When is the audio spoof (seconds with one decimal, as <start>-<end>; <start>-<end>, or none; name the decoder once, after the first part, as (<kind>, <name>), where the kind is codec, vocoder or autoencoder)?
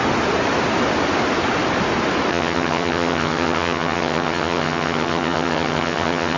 2.3-6.4 (vocoder, HiFi-GAN)